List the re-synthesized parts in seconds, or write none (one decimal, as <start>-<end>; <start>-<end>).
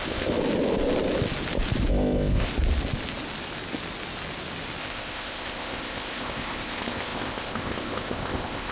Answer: 0.0-0.4; 1.9-2.5; 4.8-8.7